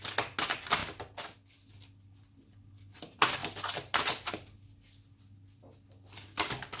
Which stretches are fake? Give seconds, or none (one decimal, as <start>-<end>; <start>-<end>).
none